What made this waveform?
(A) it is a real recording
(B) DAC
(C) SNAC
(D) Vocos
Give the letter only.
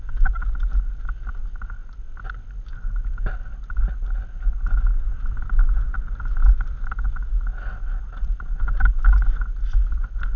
A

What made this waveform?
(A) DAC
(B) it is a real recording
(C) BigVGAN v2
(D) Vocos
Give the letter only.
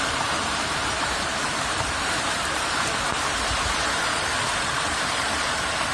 C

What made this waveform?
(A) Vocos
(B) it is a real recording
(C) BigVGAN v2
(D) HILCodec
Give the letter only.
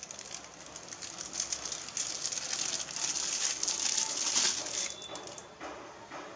B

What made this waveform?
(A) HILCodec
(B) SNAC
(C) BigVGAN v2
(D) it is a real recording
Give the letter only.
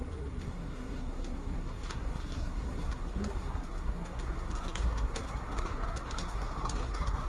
B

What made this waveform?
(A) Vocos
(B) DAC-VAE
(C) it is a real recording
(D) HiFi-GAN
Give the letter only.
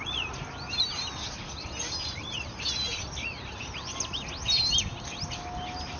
C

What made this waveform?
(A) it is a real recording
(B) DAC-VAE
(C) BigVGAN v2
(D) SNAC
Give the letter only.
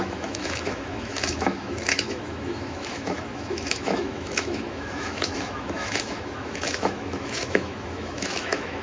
B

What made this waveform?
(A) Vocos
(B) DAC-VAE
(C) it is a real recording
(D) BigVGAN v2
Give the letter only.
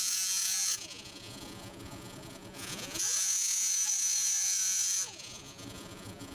A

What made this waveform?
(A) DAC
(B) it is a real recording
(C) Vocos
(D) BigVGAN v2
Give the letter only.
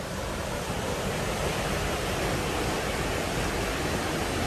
B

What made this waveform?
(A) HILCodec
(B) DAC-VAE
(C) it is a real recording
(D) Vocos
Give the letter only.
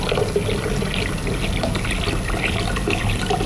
C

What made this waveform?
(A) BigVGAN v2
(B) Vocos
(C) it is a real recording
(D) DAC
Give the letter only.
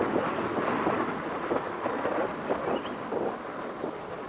C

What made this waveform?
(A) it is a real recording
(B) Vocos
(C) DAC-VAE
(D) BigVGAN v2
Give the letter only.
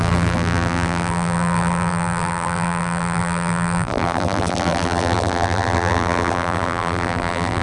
D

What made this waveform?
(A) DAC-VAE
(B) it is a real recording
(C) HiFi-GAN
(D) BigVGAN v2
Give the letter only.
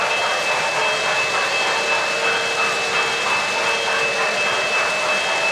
B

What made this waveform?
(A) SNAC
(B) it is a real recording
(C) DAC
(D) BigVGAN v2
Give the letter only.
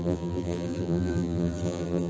D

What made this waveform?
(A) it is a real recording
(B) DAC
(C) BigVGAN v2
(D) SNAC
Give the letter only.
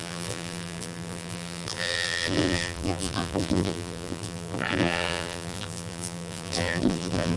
C